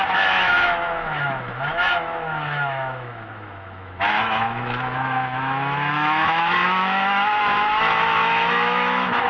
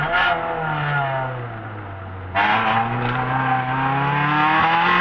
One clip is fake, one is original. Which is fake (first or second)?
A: first